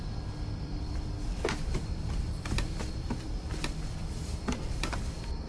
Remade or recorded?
remade